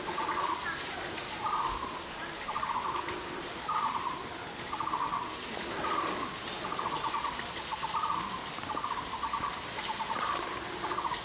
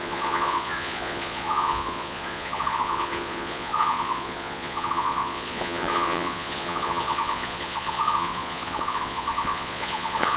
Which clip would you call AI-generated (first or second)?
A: second